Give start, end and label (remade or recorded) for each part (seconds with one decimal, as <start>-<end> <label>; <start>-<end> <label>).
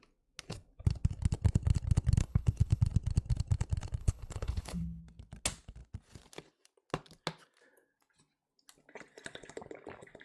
0.0-2.2 recorded; 2.2-2.8 remade; 2.8-4.0 recorded; 4.0-5.0 remade; 5.0-10.2 recorded